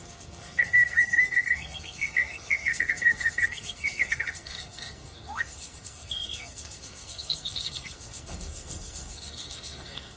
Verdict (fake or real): fake